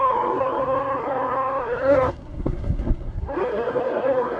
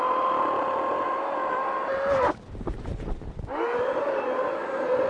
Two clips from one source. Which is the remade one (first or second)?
first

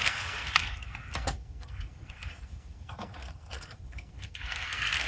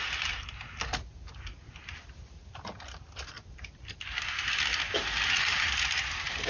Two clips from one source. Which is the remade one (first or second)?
first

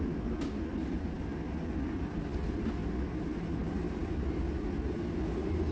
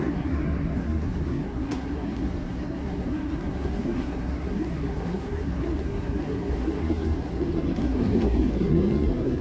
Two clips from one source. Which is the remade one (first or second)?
second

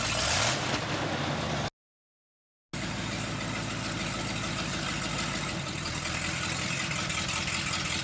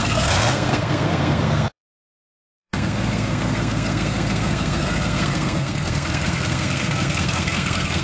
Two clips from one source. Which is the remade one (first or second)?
second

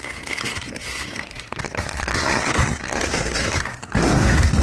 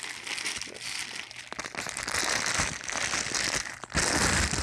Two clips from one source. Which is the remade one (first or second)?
first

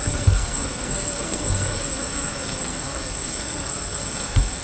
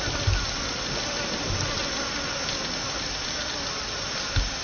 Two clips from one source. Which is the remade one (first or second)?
first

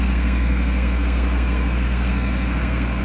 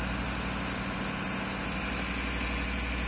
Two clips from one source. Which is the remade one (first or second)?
first